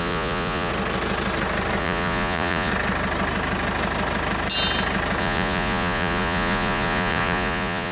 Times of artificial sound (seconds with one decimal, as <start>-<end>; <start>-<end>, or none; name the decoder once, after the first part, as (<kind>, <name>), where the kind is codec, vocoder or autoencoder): 0.0-0.7 (vocoder, Vocos); 1.8-2.7; 5.2-7.9